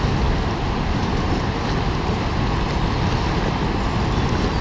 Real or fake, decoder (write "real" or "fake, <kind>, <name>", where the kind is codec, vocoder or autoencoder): real